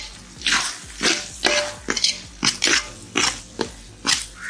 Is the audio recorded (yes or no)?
yes